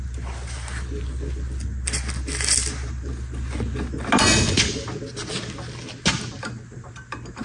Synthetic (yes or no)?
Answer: no